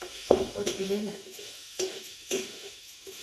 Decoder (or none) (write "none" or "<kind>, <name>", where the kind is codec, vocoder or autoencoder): autoencoder, DAC-VAE